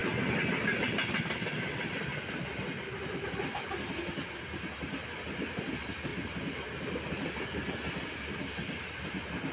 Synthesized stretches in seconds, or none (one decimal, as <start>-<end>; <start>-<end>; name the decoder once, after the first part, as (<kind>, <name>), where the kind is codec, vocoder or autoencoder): none